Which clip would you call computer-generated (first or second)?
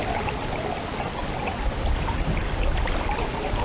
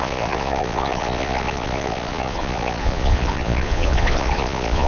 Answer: second